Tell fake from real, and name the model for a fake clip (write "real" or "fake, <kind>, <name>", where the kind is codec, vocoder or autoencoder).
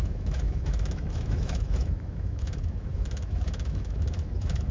fake, autoencoder, DAC-VAE